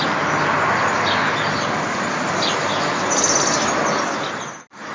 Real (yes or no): yes